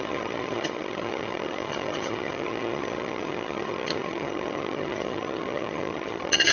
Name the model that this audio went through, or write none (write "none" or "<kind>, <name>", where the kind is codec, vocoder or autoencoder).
vocoder, HiFi-GAN